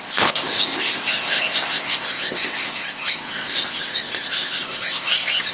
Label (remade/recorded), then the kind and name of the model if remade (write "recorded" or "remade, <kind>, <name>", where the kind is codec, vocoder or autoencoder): remade, codec, ZipCodec